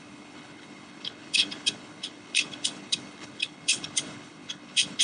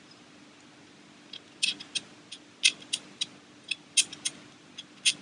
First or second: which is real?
second